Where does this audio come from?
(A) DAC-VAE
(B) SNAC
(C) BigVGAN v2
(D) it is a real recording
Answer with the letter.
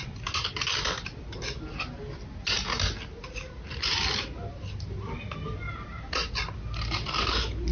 D